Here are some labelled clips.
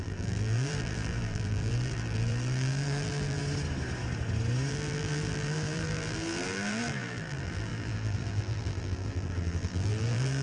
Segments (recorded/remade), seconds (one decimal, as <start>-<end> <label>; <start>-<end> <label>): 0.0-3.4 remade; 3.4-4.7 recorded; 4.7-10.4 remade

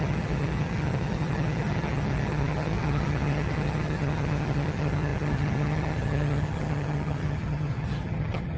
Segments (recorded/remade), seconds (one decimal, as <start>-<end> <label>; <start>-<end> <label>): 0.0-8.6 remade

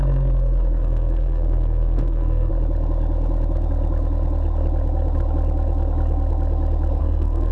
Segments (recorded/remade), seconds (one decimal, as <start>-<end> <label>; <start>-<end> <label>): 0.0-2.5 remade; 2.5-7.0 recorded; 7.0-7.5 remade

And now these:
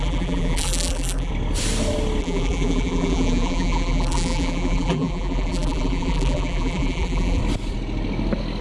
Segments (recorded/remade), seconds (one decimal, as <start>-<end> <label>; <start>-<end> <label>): 0.0-1.3 remade; 1.3-2.2 recorded; 2.2-7.4 remade; 7.4-8.6 recorded

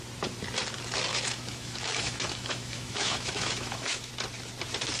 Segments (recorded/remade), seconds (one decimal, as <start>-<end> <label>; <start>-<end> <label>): 0.0-1.1 recorded; 1.1-4.1 remade; 4.1-5.0 recorded

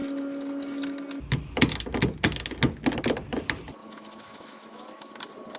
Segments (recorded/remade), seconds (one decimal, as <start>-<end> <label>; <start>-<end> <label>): 0.0-3.8 recorded; 3.8-5.1 remade; 5.1-5.6 recorded